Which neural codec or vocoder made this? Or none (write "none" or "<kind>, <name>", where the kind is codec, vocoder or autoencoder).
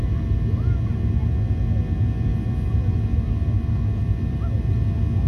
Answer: none